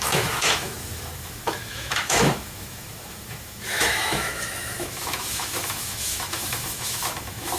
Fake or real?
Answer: fake